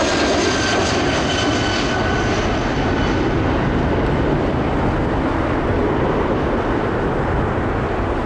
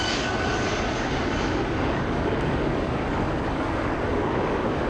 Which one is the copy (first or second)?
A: second